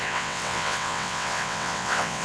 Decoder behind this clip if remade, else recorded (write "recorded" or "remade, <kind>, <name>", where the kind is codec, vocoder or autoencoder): remade, vocoder, WaveNeXt